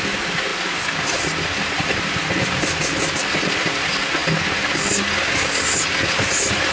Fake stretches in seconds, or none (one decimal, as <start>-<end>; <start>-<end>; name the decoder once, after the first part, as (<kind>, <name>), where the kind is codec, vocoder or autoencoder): 0.5-3.8 (vocoder, BigVGAN v2)